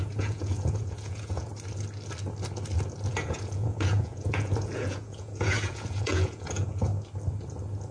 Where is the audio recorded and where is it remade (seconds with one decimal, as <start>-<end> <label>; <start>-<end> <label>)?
0.0-1.5 remade; 1.5-3.1 recorded; 3.1-6.9 remade; 6.9-7.9 recorded